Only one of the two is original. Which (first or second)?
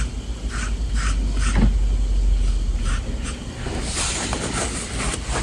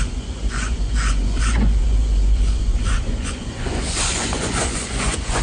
first